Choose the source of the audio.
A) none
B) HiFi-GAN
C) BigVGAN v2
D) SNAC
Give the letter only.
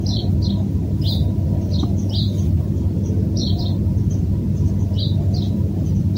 C